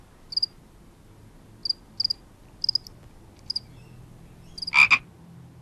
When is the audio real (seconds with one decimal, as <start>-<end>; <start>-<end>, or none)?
0.0-5.6